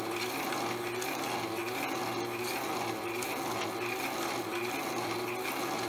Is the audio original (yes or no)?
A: yes